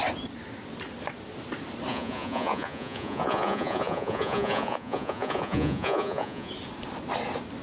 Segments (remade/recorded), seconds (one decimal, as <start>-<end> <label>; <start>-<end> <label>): 0.0-1.9 recorded; 1.9-6.5 remade; 6.5-7.6 recorded